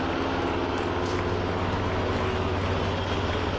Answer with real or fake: real